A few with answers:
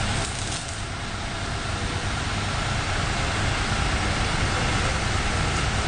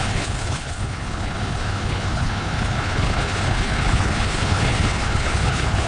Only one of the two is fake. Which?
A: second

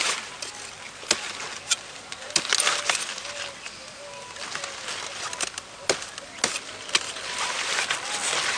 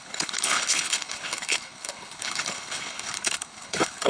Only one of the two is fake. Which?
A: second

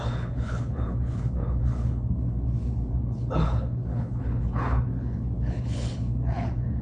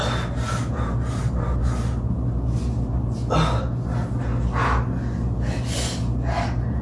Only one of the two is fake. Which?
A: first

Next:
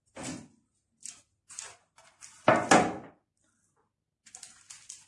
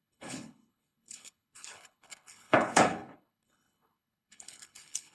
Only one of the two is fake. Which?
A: second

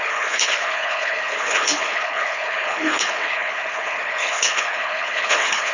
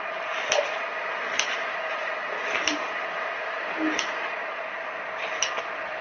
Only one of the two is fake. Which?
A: first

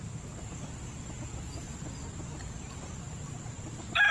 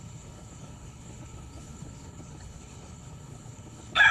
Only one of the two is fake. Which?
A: second